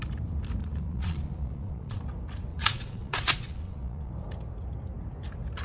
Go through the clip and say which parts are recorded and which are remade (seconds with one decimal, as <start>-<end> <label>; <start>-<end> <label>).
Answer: 0.0-0.6 recorded; 0.6-2.0 remade; 2.0-2.5 recorded; 2.5-4.1 remade; 4.1-5.6 recorded